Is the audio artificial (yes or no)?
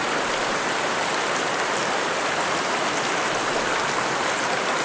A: no